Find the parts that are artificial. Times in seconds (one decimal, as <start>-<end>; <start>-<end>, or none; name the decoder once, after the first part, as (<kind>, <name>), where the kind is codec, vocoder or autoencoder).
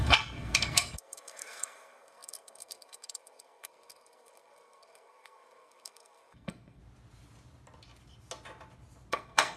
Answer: 0.0-6.8 (codec, SNAC); 9.1-9.6